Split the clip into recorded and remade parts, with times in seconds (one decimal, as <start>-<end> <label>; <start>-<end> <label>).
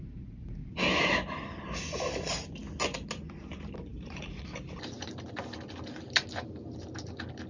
0.0-3.9 recorded; 3.9-4.6 remade; 4.6-7.5 recorded